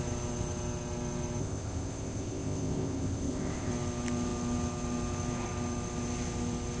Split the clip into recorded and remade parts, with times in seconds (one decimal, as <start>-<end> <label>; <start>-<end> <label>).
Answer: 0.0-1.4 recorded; 1.4-3.7 remade; 3.7-6.8 recorded